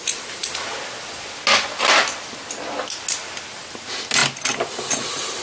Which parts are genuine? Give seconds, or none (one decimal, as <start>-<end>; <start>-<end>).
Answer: 0.0-5.4